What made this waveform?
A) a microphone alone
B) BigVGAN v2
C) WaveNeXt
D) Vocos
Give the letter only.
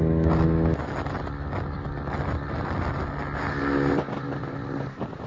A